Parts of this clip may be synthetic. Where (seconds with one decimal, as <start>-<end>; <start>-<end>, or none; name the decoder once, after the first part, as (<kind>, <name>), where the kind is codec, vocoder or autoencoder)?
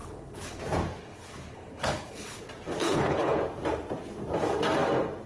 0.0-0.6 (codec, HILCodec); 1.0-2.4; 2.8-3.4